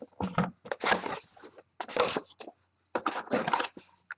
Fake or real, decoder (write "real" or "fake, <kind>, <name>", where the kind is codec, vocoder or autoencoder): real